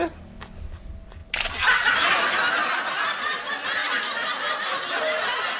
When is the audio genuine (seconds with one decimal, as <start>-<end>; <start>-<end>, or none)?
0.0-5.6